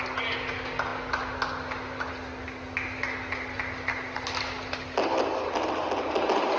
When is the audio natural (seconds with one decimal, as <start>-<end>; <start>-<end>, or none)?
0.0-6.6